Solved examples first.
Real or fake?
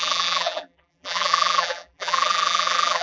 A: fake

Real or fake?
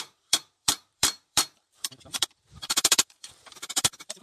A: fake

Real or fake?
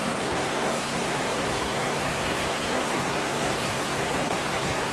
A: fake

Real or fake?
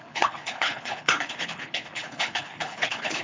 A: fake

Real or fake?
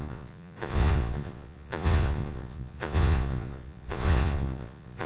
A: fake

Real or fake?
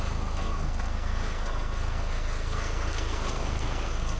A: fake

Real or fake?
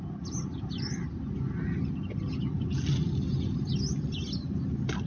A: real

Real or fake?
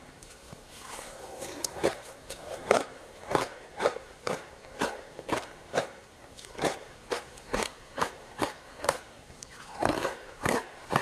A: fake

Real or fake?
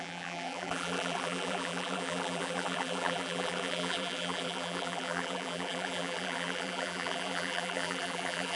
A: fake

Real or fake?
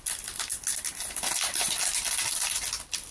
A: real